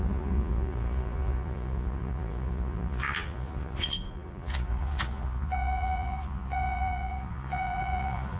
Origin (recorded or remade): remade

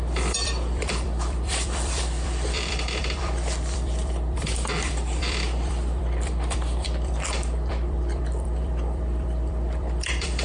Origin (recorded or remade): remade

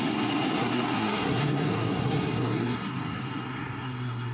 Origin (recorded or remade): remade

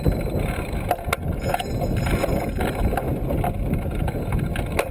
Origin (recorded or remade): recorded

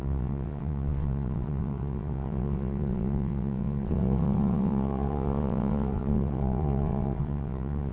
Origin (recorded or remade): remade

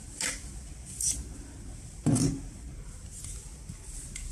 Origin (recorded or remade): recorded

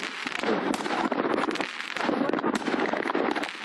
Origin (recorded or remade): recorded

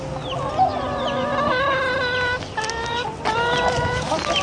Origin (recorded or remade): recorded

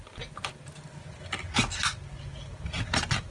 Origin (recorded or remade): recorded